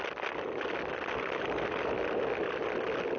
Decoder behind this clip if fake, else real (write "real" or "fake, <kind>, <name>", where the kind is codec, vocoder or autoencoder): real